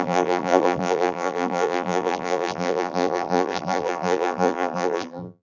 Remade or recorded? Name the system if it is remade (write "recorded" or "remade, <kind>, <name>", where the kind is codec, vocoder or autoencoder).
remade, vocoder, BigVGAN v2